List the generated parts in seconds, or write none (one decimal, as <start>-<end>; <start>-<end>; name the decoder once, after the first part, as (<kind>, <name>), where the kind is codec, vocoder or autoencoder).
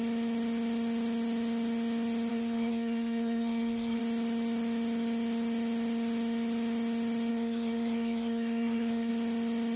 2.3-4.0 (codec, SNAC); 7.3-9.1